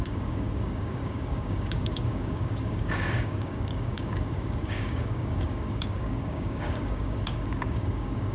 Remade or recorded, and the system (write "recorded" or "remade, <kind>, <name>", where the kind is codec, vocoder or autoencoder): remade, codec, DAC